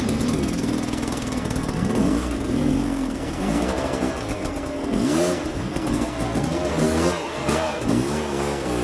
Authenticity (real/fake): fake